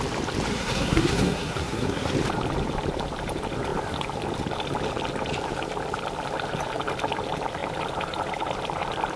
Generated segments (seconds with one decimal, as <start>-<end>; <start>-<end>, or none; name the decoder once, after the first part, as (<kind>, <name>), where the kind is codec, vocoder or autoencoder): 0.5-2.1 (codec, SNAC)